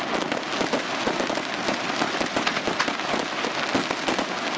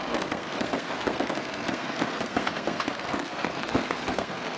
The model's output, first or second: second